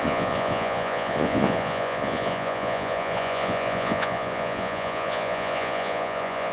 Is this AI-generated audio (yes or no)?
yes